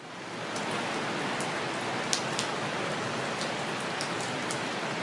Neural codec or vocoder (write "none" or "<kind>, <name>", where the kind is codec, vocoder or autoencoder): none